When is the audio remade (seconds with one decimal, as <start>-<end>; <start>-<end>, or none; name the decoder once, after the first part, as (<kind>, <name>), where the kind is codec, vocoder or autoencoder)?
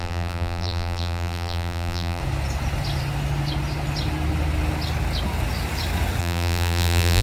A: 0.0-2.2 (vocoder, BigVGAN v2); 6.2-7.2